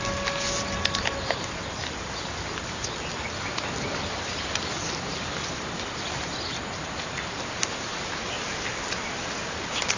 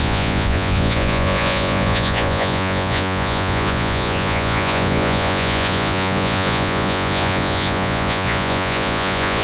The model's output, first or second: second